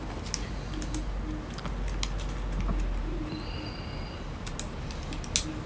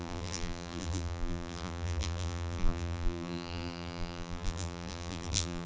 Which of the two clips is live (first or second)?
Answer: first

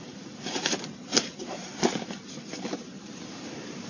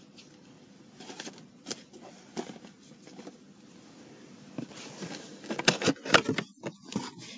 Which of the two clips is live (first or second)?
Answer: second